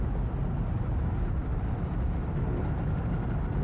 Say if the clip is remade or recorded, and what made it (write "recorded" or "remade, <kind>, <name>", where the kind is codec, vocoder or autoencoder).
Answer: recorded